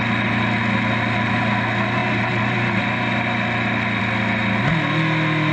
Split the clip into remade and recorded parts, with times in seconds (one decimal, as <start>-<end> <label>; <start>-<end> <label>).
0.0-5.5 recorded